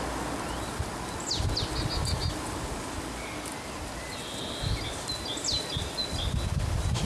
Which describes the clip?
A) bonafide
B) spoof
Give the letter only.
A